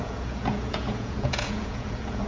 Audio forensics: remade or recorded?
remade